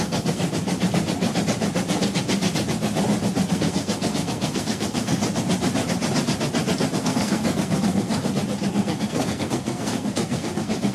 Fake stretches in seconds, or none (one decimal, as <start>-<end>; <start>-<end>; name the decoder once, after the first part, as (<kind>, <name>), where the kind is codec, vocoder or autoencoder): 0.0-0.4 (codec, SNAC); 3.5-5.2; 7.0-8.2; 8.7-10.9